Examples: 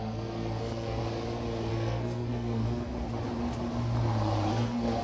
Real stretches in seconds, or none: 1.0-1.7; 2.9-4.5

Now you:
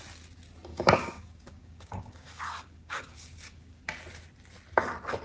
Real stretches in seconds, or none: 0.0-0.7; 3.8-5.2